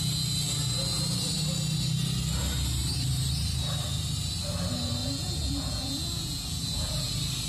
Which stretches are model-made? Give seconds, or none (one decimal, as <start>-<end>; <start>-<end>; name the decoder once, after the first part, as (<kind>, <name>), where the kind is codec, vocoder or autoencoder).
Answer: 5.0-7.1 (vocoder, Vocos)